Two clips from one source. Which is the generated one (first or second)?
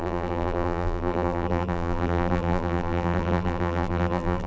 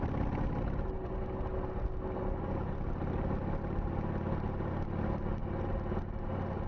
first